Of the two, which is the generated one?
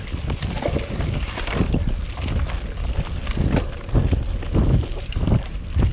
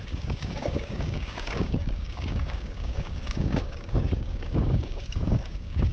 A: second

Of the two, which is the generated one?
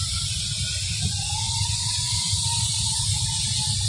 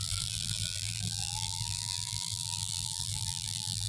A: second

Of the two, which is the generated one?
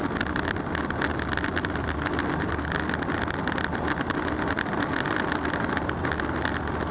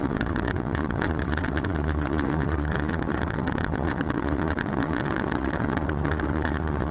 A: second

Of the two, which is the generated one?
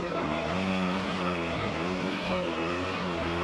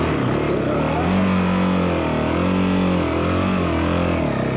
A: first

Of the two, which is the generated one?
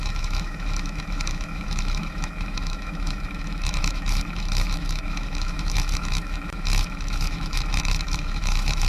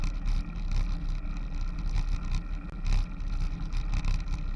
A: first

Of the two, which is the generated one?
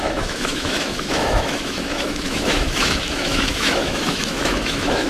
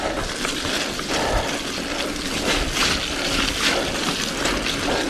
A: first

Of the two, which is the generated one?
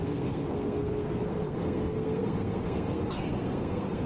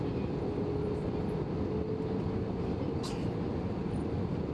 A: first